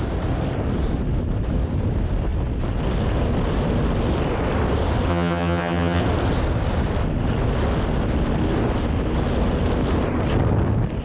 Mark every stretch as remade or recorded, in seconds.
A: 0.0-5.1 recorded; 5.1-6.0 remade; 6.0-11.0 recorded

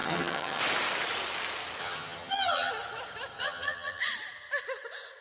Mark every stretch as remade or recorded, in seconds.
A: 0.0-0.6 remade; 0.6-1.8 recorded; 1.8-2.7 remade; 2.7-3.4 recorded; 3.4-4.0 remade; 4.0-5.2 recorded

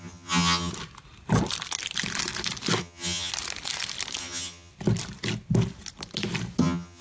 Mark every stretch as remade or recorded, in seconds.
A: 0.0-0.7 remade; 0.7-2.8 recorded; 2.8-3.3 remade; 3.3-4.2 recorded; 4.2-4.7 remade; 4.7-6.6 recorded; 6.6-7.0 remade

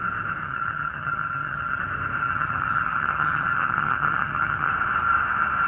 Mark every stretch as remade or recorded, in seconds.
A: 0.0-0.4 recorded; 0.4-1.8 remade; 1.8-2.2 recorded; 2.2-4.7 remade; 4.7-5.7 recorded